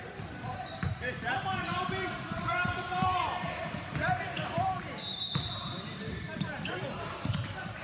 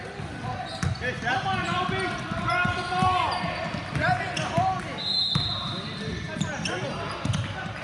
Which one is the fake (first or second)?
first